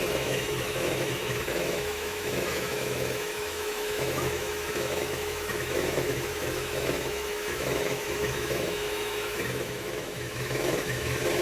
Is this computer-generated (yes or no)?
yes